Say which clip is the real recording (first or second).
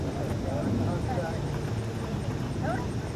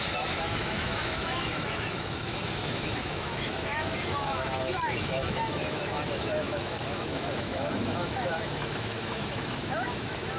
first